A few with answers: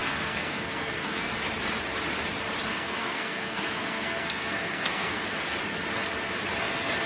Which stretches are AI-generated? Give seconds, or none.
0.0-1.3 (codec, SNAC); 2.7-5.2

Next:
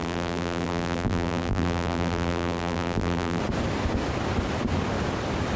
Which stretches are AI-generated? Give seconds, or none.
0.0-3.4 (vocoder, BigVGAN v2)

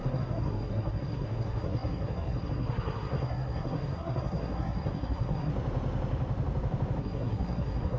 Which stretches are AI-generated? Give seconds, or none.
0.0-5.5 (codec, SNAC); 7.0-8.0

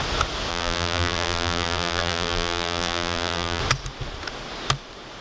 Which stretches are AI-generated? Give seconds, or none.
0.5-3.6 (vocoder, BigVGAN v2)

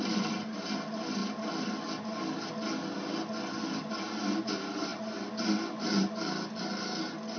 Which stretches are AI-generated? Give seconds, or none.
none

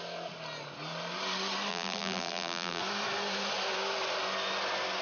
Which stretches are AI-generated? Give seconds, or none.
1.7-2.8 (vocoder, BigVGAN v2)

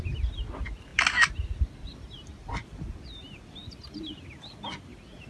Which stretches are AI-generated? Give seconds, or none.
3.6-4.1 (vocoder, BigVGAN v2)

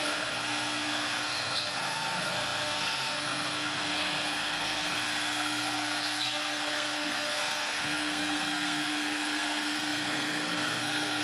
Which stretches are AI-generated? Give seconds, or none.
0.0-11.2 (codec, SNAC)